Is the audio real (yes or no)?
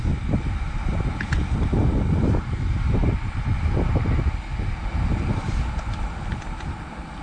yes